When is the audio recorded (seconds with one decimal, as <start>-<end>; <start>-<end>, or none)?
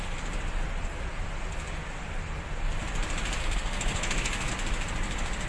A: 0.0-3.4; 4.5-5.5